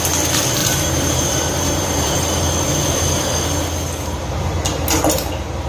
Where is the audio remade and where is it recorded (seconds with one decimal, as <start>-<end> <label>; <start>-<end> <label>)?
0.0-0.6 recorded; 0.6-2.1 remade; 2.1-5.7 recorded